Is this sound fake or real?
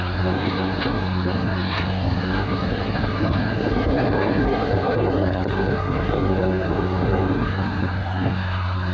fake